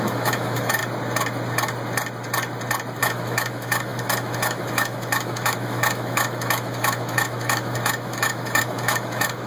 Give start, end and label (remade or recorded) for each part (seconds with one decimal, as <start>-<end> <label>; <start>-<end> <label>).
0.0-0.8 remade; 0.8-3.0 recorded; 3.0-9.5 remade